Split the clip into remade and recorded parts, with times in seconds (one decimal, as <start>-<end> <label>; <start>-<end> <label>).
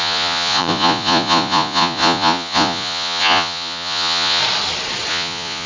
0.0-4.4 remade; 4.4-5.1 recorded; 5.1-5.7 remade